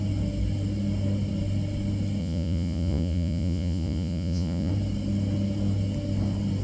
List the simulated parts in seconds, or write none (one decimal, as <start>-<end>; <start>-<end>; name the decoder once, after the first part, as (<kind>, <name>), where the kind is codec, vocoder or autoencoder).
2.2-4.7 (vocoder, Vocos)